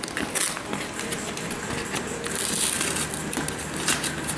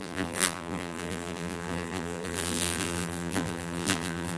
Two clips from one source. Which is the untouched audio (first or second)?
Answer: first